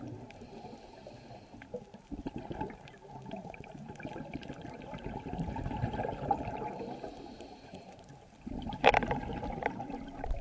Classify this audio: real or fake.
fake